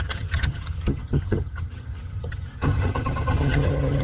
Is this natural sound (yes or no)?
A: no